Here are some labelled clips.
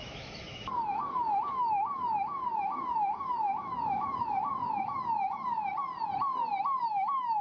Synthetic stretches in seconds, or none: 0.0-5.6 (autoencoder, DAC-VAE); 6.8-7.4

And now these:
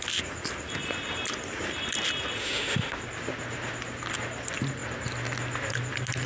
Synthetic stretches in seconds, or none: 2.4-3.0 (autoencoder, DAC-VAE)

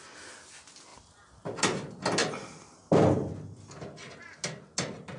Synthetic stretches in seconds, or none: none

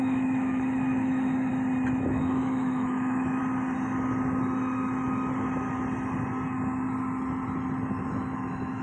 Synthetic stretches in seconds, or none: 0.0-1.5 (autoencoder, DAC-VAE); 2.0-3.4; 8.0-8.8

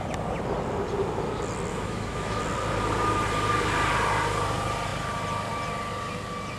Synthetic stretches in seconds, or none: 1.7-2.4 (autoencoder, DAC-VAE)

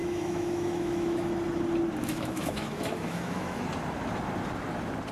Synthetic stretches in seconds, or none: 0.0-1.3 (autoencoder, DAC-VAE); 2.0-3.6

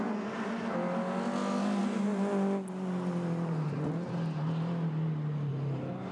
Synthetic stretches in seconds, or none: none

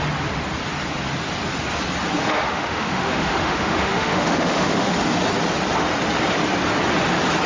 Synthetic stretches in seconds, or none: 2.3-4.9 (autoencoder, DAC-VAE)